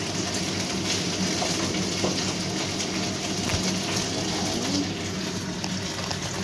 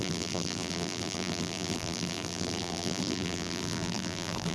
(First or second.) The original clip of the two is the first